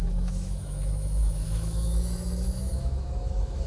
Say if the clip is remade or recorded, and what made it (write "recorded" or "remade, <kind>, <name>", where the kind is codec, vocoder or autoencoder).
remade, autoencoder, DAC-VAE